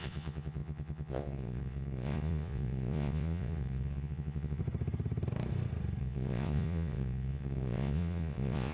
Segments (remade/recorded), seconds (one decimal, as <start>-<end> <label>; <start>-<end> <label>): 0.0-4.6 remade; 4.6-6.0 recorded; 6.0-8.7 remade